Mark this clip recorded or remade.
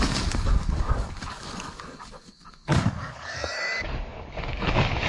remade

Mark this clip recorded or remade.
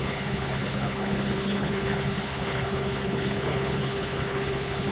remade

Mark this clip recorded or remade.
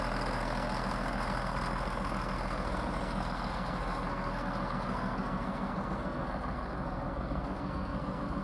remade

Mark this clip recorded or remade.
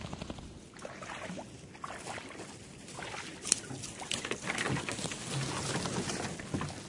recorded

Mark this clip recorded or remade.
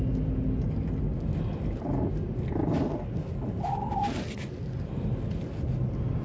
recorded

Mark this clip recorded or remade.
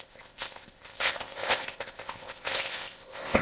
remade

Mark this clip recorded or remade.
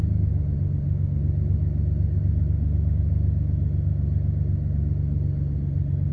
recorded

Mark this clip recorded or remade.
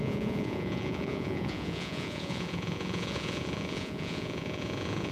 remade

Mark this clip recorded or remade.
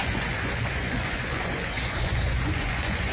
remade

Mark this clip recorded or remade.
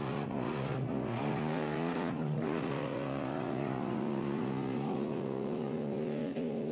remade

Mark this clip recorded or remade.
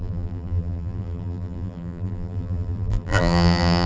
remade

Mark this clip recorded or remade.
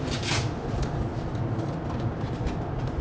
recorded